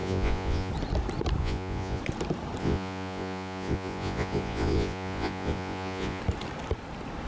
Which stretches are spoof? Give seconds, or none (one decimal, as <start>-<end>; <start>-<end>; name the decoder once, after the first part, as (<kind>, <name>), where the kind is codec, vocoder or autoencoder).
0.0-0.7 (vocoder, Vocos); 1.4-2.0; 2.6-6.2

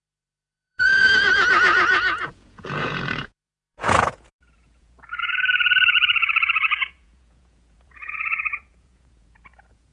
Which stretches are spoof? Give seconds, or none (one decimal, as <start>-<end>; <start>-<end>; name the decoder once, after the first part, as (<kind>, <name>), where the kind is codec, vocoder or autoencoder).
0.0-9.9 (vocoder, Vocos)

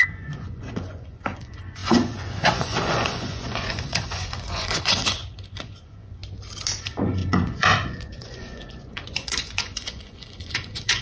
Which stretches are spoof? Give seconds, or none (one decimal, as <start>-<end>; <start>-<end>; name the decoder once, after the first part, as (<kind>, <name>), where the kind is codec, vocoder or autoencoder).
0.0-6.2 (vocoder, Vocos); 6.8-11.0

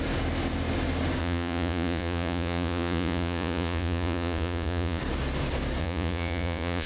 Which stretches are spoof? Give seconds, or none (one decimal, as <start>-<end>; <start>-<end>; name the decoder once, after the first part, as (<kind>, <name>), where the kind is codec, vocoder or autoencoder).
1.2-5.0 (vocoder, Vocos); 5.8-6.9

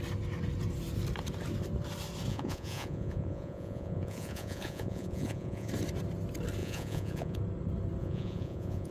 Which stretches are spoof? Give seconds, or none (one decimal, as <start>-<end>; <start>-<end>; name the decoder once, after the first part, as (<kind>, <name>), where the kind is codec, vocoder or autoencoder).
2.3-5.7 (vocoder, Vocos); 6.6-7.4; 8.0-8.9

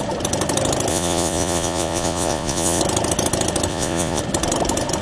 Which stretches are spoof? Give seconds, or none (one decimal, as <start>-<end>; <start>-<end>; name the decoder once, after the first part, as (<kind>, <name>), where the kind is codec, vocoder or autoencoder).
0.9-2.8 (vocoder, Vocos); 3.7-4.2